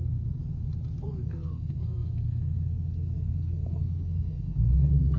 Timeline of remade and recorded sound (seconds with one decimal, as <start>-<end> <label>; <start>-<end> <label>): 0.0-0.4 remade; 0.4-1.1 recorded; 1.1-5.2 remade